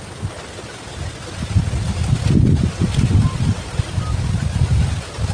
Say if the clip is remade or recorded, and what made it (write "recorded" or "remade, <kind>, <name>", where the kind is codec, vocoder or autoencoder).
recorded